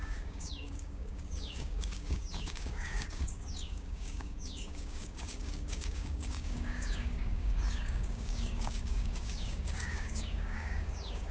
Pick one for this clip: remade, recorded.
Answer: remade